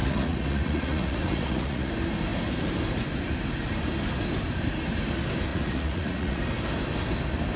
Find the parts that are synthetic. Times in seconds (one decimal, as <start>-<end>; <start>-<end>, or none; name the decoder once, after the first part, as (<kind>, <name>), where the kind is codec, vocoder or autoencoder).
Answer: 0.0-1.9 (vocoder, Vocos); 5.5-6.4